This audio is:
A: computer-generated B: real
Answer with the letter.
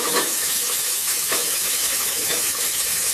A